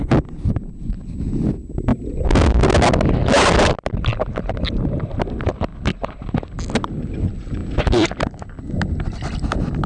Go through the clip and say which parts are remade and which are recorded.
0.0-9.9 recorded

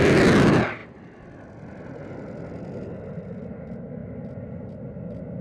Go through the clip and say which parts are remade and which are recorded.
0.0-5.4 recorded

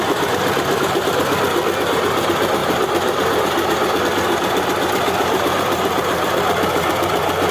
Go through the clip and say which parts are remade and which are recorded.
0.0-2.6 recorded; 2.6-4.0 remade; 4.0-4.4 recorded; 4.4-6.3 remade; 6.3-7.5 recorded

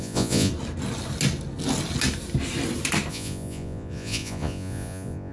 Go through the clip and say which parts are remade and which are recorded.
0.0-0.5 remade; 0.5-3.1 recorded; 3.1-5.3 remade

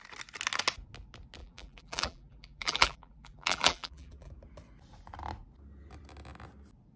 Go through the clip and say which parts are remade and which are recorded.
0.0-1.4 recorded; 1.4-4.3 remade; 4.3-7.0 recorded

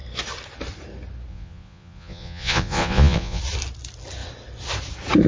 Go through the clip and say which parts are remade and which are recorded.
0.0-1.3 recorded; 1.3-3.4 remade; 3.4-5.3 recorded